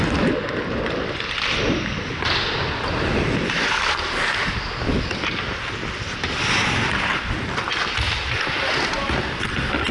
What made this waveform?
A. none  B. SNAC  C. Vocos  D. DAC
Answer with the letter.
A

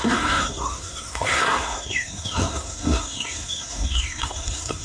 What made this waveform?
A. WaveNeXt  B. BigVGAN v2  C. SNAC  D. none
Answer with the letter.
C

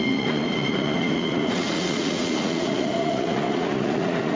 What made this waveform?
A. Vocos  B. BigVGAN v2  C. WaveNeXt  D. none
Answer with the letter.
A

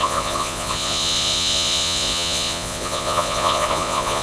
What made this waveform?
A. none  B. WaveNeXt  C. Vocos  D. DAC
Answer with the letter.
C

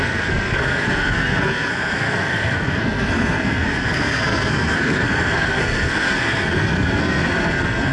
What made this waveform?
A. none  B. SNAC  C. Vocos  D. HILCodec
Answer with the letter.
B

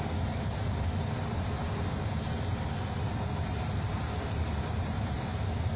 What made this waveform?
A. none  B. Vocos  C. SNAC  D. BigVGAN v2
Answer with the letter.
A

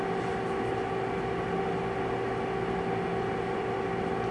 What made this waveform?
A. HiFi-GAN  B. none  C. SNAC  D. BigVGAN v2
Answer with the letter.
B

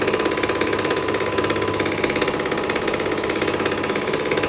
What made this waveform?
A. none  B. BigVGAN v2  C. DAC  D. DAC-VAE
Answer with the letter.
A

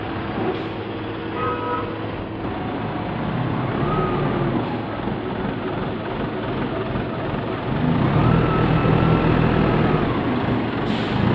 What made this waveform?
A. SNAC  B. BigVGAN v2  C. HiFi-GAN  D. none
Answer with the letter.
D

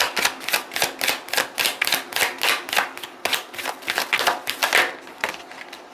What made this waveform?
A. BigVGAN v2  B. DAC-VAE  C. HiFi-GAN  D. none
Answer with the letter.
D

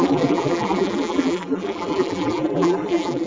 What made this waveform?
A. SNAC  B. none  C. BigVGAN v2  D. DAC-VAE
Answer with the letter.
C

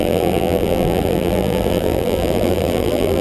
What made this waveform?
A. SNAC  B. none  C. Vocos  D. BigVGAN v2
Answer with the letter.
D